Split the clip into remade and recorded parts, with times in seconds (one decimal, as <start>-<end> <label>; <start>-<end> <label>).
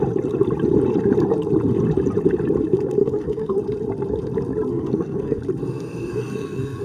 0.0-3.0 recorded; 3.0-3.6 remade; 3.6-4.7 recorded; 4.7-5.4 remade; 5.4-6.1 recorded; 6.1-6.8 remade